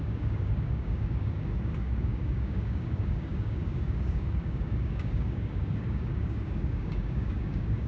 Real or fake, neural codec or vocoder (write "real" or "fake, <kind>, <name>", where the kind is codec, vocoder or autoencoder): fake, codec, DAC